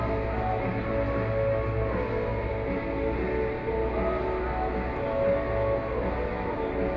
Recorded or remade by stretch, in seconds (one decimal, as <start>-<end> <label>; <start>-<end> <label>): 0.0-7.0 recorded